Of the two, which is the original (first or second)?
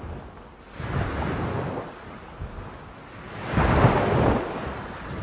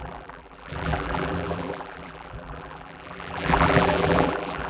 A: first